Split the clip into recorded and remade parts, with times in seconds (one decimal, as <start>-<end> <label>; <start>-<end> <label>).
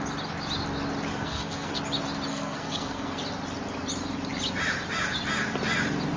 0.0-1.1 recorded; 1.1-1.8 remade; 1.8-2.3 recorded; 2.3-3.2 remade; 3.2-6.2 recorded